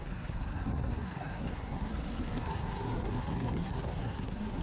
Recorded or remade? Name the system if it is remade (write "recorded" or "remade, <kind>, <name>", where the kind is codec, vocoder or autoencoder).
remade, codec, SNAC